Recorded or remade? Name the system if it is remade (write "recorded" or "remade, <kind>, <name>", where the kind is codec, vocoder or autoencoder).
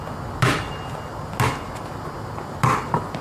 recorded